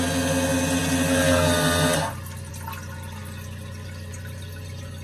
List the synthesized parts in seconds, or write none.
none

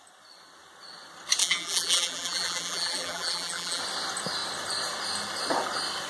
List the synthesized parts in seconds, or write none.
1.4-3.8 (vocoder, BigVGAN v2)